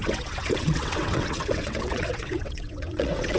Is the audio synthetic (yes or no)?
yes